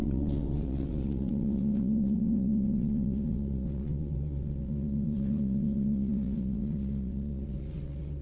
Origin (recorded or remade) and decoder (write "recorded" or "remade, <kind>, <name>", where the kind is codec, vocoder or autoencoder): remade, vocoder, WaveNeXt